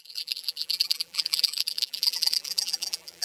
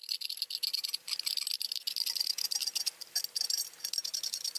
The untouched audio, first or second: second